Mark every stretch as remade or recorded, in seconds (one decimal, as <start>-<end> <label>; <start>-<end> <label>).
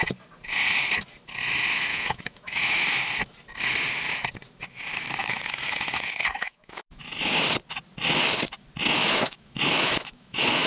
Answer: 0.0-1.9 recorded; 1.9-3.0 remade; 3.0-5.2 recorded; 5.2-7.3 remade; 7.3-9.0 recorded; 9.0-10.7 remade